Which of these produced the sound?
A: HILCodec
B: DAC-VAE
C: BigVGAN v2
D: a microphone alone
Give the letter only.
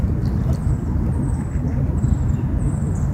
D